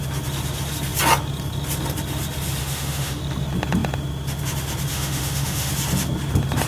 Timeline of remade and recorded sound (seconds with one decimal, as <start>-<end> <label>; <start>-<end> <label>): 0.0-2.6 recorded; 2.6-3.2 remade; 3.2-4.9 recorded; 4.9-5.7 remade; 5.7-6.7 recorded